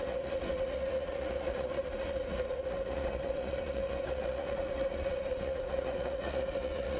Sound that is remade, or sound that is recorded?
remade